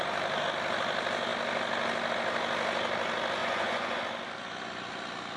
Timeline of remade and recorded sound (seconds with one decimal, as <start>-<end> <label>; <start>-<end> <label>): 0.0-3.4 recorded; 3.4-4.0 remade; 4.0-5.4 recorded